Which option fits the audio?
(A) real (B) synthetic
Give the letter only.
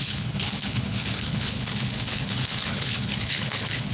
B